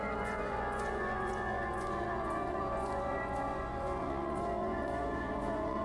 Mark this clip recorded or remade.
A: remade